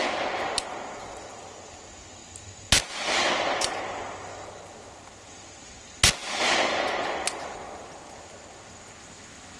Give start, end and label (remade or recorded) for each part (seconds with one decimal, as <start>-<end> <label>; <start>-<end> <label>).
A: 0.0-9.0 recorded; 9.0-9.6 remade